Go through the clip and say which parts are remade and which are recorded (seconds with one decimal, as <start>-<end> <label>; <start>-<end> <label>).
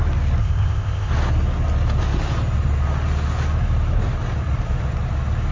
0.0-0.4 recorded; 0.4-1.1 remade; 1.1-5.5 recorded